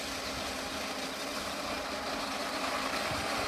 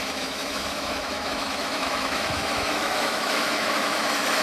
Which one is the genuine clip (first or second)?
first